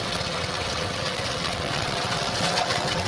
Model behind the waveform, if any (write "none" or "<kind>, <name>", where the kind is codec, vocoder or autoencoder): vocoder, WaveNeXt